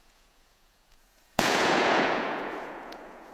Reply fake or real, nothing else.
fake